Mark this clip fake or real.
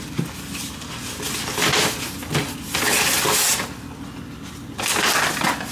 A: real